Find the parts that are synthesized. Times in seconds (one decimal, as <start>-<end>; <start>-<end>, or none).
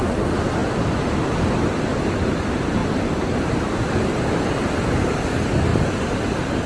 2.8-4.9